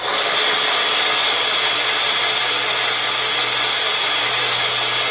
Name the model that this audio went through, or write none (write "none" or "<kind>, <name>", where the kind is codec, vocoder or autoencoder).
none